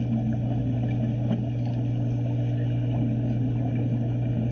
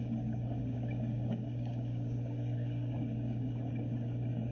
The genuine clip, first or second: first